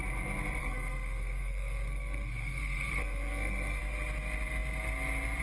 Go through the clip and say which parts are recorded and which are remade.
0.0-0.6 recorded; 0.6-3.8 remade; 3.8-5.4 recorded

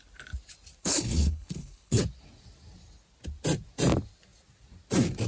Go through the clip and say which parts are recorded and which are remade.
0.0-0.8 recorded; 0.8-2.0 remade; 2.0-5.3 recorded

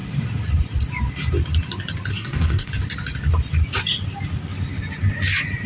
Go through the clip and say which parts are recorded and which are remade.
0.0-2.1 recorded; 2.1-2.7 remade; 2.7-5.7 recorded

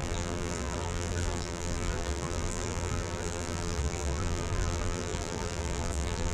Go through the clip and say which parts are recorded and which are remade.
0.0-6.3 remade

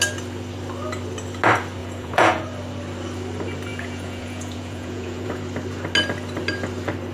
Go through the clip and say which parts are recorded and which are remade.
0.0-1.8 recorded; 1.8-2.4 remade; 2.4-3.7 recorded; 3.7-5.4 remade; 5.4-7.1 recorded